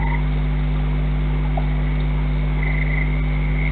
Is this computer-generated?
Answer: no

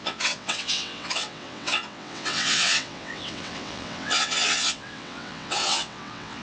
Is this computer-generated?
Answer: yes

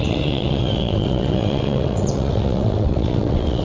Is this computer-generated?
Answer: yes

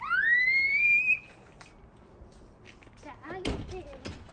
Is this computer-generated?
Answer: no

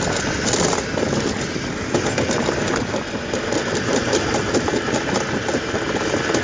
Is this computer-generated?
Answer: no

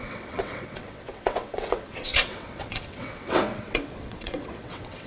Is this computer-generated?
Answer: yes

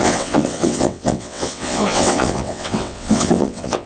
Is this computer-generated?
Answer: yes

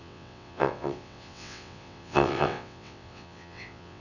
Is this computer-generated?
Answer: yes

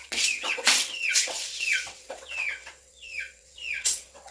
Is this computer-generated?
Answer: yes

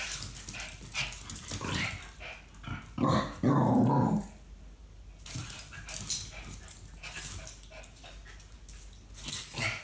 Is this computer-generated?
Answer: no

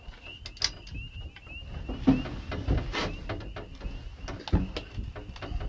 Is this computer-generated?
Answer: no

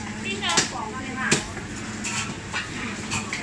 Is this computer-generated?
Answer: no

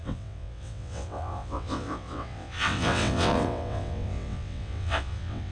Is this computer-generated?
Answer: yes